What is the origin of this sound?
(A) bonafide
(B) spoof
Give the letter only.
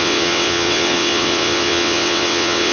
B